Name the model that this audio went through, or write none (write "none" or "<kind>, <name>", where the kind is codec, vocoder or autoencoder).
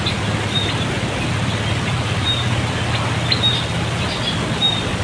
none